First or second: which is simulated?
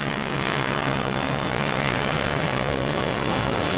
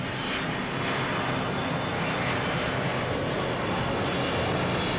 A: first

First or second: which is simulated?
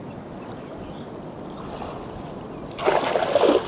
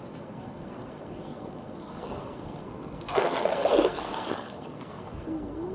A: second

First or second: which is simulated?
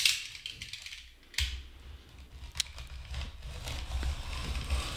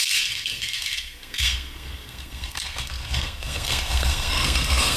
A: second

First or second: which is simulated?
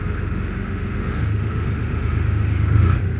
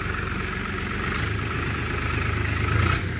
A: first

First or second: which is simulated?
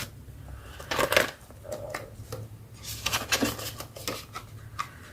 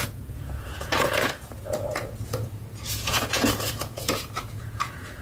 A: second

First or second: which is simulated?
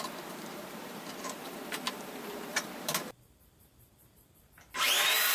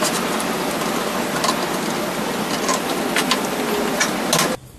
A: first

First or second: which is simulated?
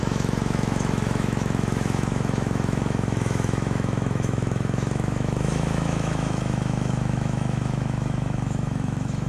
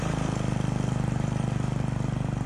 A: first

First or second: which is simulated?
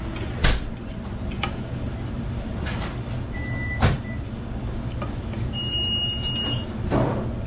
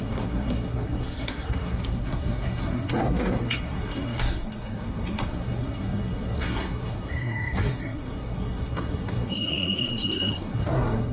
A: second